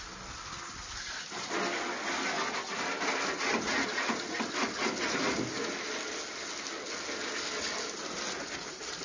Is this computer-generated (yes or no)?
no